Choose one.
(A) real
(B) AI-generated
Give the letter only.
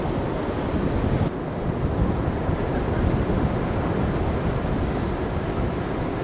B